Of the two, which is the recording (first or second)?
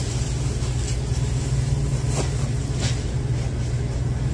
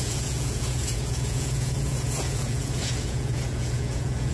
first